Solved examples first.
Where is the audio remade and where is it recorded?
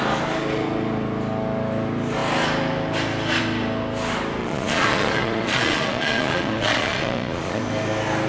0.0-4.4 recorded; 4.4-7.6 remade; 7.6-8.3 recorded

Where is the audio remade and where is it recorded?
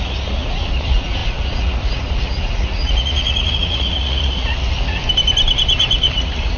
0.0-5.0 remade; 5.0-6.1 recorded; 6.1-6.6 remade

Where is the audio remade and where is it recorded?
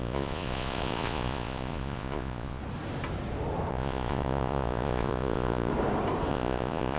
0.0-2.6 remade; 2.6-3.7 recorded; 3.7-5.7 remade; 5.7-6.3 recorded; 6.3-7.0 remade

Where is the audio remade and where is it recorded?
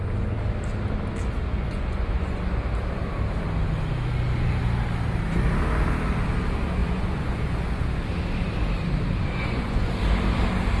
0.0-1.5 recorded; 1.5-2.4 remade; 2.4-6.8 recorded; 6.8-8.0 remade; 8.0-9.3 recorded; 9.3-9.9 remade; 9.9-10.8 recorded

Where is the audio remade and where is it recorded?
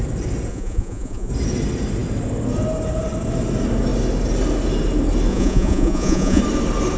0.0-0.5 recorded; 0.5-1.3 remade; 1.3-5.3 recorded; 5.3-6.4 remade; 6.4-7.0 recorded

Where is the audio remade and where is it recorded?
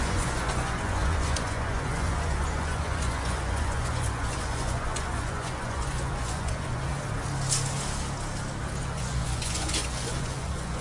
0.0-6.9 remade; 6.9-8.8 recorded; 8.8-10.8 remade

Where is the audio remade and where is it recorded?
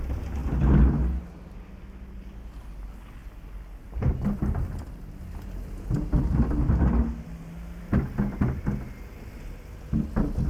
0.0-10.5 recorded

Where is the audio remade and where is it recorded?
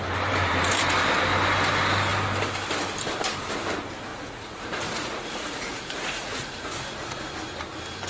0.0-4.1 recorded; 4.1-7.3 remade; 7.3-8.1 recorded